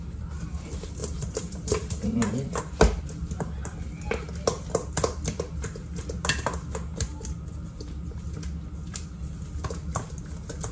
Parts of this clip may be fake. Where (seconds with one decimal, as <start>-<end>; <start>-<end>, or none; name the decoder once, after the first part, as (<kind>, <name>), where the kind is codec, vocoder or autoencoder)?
1.0-2.6 (vocoder, BigVGAN v2)